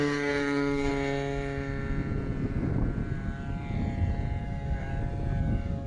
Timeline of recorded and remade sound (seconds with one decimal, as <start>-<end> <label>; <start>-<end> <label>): 0.0-0.9 remade; 0.9-4.4 recorded; 4.4-4.9 remade; 4.9-5.4 recorded; 5.4-5.9 remade